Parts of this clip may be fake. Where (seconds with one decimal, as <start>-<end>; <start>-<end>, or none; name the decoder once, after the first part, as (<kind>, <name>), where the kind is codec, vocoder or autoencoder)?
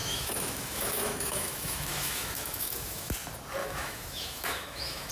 0.0-3.1 (autoencoder, DAC-VAE); 3.6-5.1